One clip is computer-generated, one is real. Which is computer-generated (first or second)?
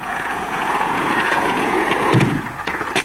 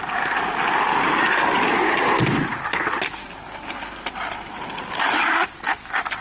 first